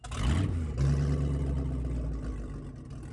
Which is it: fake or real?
real